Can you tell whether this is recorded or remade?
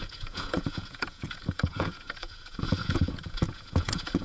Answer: remade